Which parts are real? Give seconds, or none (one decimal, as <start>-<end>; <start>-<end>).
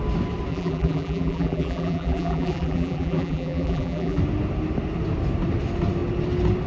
0.0-0.5; 4.2-6.7